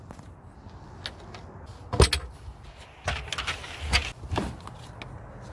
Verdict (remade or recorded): recorded